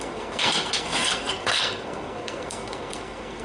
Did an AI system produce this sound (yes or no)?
yes